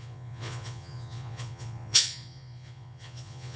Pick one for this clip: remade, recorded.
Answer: remade